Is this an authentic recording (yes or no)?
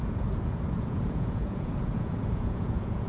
no